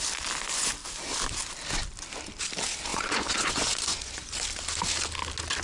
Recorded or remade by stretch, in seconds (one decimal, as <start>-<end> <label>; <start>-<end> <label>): 0.0-2.9 recorded; 2.9-4.3 remade; 4.3-5.6 recorded